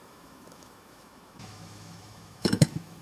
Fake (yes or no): yes